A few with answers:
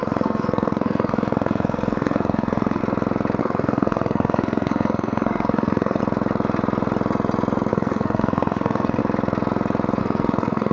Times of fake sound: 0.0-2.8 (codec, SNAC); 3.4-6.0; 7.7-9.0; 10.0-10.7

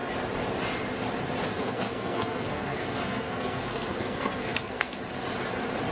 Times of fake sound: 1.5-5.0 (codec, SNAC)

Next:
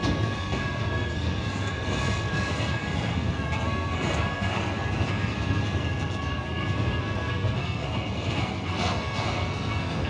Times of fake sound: 0.0-10.1 (codec, SNAC)

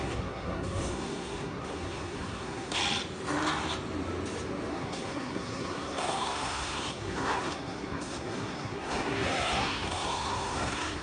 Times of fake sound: 0.0-2.8 (codec, SNAC); 4.7-11.0

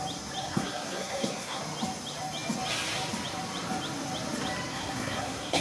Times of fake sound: 0.4-1.6 (codec, SNAC); 4.7-5.6

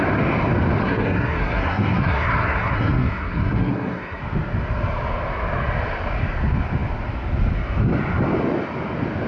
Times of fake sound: 0.8-4.2 (codec, SNAC)

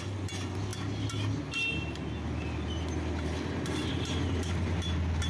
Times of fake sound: none

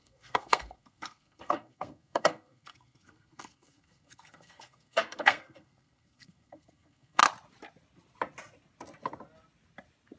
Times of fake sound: 0.0-7.2 (codec, SNAC)